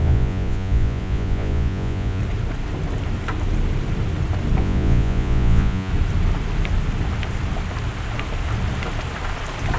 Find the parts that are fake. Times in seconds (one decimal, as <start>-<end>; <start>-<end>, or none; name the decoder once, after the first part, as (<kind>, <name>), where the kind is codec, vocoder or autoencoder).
0.0-2.2 (vocoder, Vocos); 4.6-5.9